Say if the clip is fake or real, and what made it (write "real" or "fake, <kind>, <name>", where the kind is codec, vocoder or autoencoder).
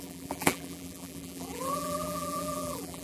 fake, vocoder, BigVGAN v2